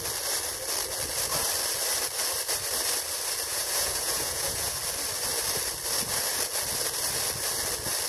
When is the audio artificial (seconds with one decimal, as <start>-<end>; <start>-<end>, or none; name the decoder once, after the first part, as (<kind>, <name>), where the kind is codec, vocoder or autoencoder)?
3.5-4.8 (vocoder, Vocos)